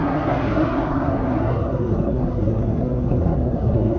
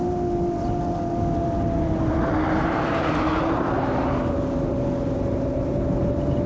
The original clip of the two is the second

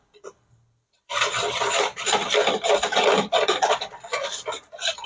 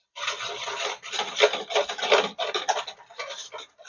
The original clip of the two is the second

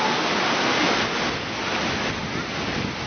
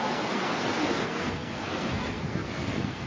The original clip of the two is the first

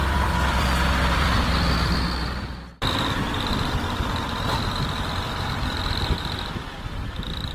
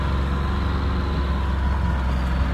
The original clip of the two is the second